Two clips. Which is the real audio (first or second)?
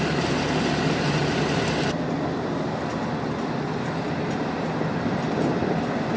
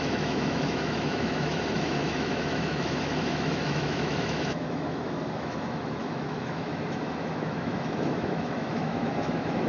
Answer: first